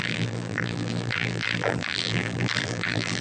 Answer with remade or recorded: remade